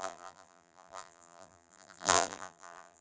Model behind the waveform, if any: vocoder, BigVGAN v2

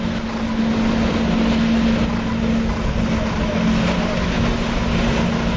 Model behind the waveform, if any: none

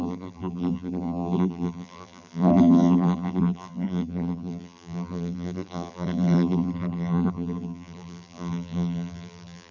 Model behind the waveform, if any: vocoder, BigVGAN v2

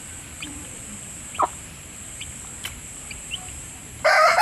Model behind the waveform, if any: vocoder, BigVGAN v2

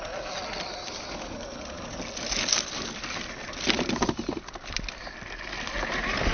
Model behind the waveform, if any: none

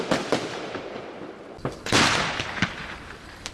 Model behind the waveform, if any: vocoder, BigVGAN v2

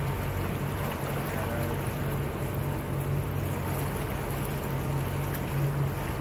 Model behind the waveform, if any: none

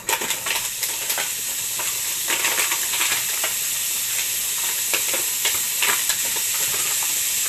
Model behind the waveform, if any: none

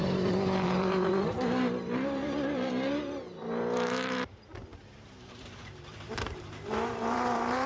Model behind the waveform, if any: vocoder, BigVGAN v2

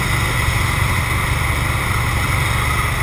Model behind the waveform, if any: none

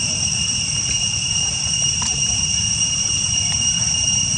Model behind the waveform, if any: vocoder, BigVGAN v2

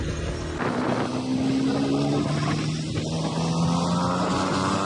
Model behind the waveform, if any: none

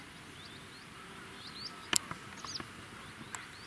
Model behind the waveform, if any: none